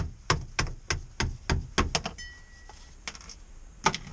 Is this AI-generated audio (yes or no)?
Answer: no